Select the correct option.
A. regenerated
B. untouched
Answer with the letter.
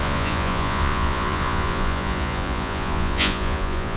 A